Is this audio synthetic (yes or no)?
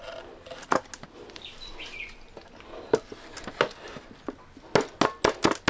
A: no